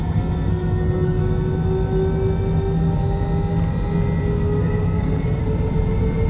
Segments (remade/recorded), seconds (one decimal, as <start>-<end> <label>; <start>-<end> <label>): 0.0-1.2 remade; 1.2-4.6 recorded; 4.6-5.4 remade; 5.4-6.3 recorded